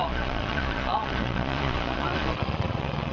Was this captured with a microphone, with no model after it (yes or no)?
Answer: no